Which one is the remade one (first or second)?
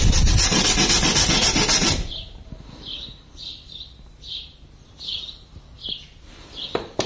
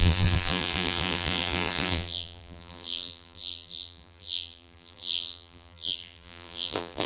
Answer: second